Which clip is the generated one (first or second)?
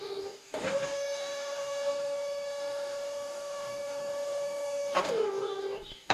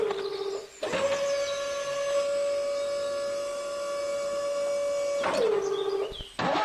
first